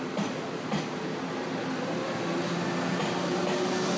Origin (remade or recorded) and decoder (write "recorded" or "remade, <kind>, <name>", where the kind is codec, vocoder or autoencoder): recorded